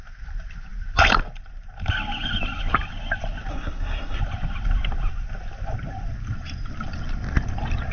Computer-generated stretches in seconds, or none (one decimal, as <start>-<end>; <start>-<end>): 3.5-4.2